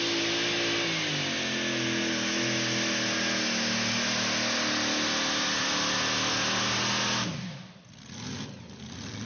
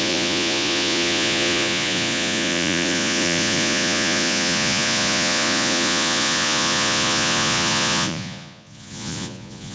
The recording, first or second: first